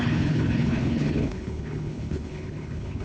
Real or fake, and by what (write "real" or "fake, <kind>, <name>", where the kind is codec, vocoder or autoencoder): fake, codec, HILCodec